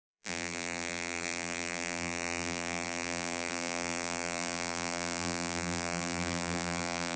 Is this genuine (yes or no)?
no